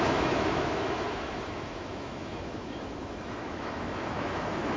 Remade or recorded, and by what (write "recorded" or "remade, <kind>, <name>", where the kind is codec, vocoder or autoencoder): remade, autoencoder, DAC-VAE